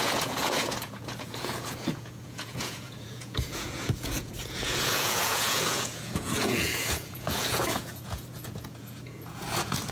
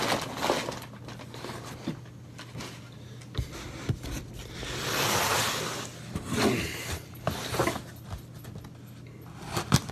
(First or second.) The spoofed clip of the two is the first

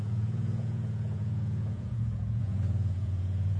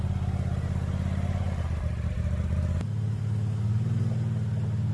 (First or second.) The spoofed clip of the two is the first